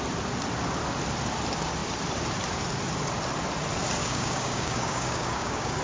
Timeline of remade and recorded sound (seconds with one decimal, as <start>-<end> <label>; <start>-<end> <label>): 0.0-4.0 recorded; 4.0-5.8 remade